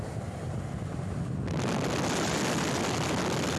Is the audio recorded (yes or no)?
yes